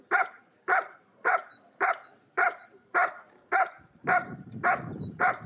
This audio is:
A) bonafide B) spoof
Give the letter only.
B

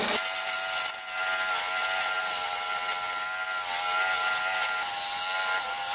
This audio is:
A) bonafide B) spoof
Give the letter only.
A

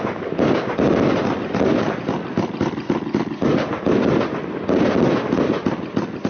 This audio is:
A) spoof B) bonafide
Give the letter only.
B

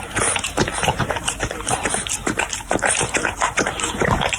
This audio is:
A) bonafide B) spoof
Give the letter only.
B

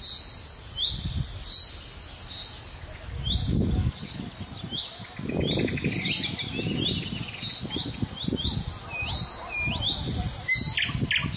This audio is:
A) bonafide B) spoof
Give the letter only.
A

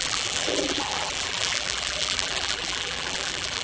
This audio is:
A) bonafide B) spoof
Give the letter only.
B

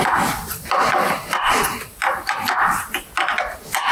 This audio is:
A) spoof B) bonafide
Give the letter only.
B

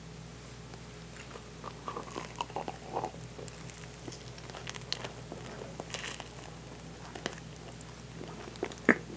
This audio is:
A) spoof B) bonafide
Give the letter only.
B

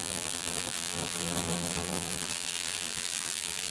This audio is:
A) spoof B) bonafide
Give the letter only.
A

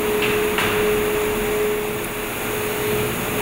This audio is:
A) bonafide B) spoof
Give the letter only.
A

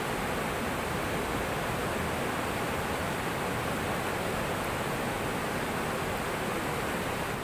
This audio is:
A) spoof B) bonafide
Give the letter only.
B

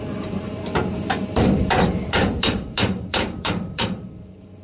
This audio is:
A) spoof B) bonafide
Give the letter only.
A